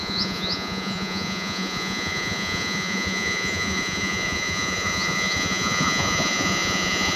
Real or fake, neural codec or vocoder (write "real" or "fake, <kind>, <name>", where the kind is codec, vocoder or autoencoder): fake, vocoder, Vocos